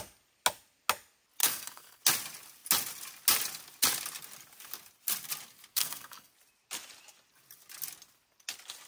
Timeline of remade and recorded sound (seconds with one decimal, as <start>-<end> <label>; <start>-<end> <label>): 0.0-1.4 recorded; 1.4-2.0 remade; 2.0-5.7 recorded; 5.7-6.3 remade; 6.3-8.9 recorded